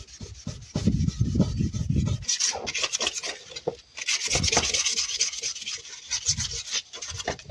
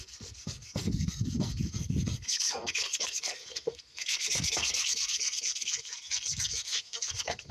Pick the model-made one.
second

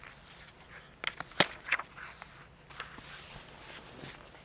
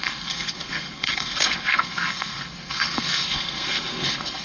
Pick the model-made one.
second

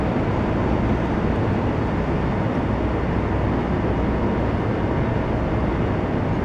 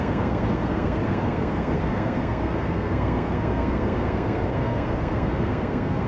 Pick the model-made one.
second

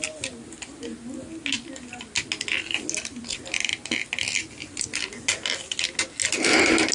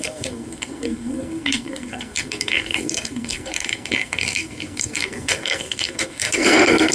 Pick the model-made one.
second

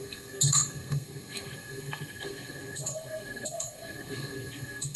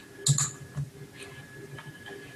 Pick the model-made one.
first